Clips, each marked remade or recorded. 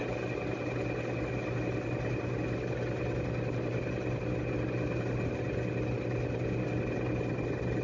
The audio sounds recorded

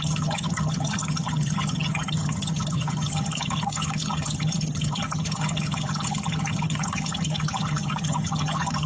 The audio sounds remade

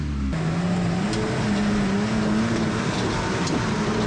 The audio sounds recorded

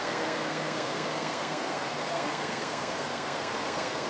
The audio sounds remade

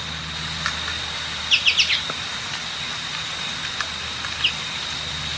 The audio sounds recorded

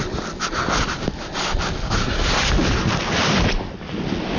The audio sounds recorded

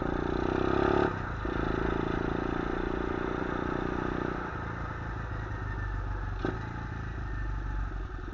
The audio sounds recorded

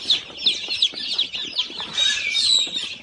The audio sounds recorded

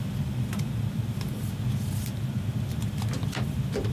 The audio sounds remade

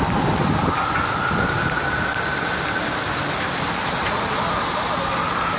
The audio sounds recorded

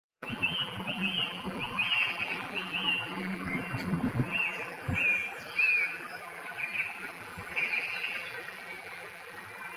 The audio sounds remade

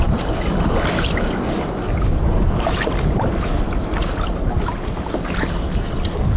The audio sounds recorded